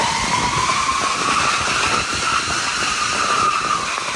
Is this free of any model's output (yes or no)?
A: yes